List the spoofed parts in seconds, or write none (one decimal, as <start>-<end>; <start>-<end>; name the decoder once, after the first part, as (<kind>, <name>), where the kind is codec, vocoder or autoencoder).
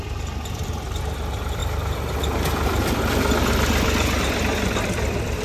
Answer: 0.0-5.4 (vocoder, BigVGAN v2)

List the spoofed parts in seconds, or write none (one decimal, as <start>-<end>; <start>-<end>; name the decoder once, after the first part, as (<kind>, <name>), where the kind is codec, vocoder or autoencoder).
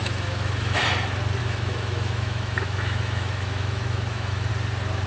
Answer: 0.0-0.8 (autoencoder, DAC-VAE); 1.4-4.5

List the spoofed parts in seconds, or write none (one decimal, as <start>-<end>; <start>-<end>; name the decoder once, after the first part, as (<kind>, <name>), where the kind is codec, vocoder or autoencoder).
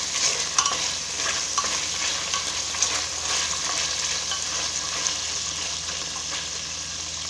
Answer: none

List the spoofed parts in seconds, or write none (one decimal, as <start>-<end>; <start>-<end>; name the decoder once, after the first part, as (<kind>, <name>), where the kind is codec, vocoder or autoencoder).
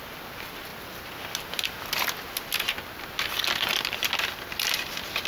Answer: none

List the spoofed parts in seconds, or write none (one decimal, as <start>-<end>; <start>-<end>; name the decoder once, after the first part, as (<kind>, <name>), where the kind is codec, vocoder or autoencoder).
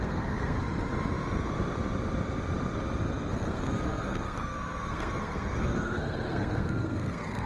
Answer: 0.0-0.6 (codec, SNAC); 3.3-7.5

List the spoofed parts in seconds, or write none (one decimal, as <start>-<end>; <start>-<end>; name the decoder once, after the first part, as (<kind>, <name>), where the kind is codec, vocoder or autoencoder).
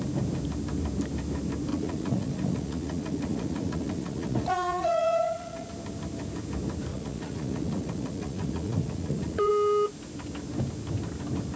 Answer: 1.7-5.7 (vocoder, Vocos); 6.9-9.5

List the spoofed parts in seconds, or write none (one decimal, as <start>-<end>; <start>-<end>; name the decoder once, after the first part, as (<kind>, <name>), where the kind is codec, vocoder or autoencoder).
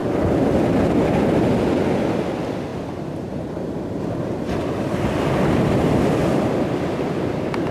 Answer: 2.7-3.5 (vocoder, BigVGAN v2); 6.2-6.9